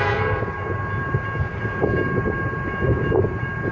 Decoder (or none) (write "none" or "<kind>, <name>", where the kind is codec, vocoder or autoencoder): none